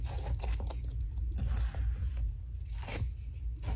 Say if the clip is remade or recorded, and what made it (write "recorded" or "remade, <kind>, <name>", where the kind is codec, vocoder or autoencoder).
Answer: recorded